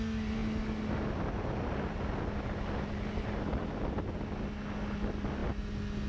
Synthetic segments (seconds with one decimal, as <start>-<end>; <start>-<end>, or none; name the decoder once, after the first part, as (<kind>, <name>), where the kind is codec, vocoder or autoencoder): none